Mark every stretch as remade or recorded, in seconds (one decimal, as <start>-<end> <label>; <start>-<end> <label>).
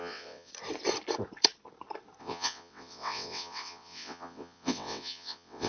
0.0-0.5 remade; 0.5-2.2 recorded; 2.2-5.7 remade